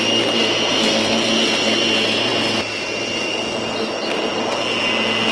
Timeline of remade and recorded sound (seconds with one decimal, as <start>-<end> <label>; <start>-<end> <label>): 0.0-5.3 recorded